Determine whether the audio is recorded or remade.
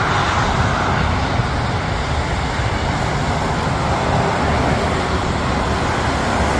recorded